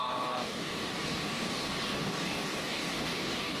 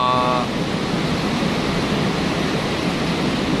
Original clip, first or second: second